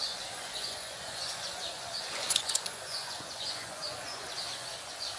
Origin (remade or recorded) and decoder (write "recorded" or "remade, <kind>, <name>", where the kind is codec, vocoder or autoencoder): remade, vocoder, Vocos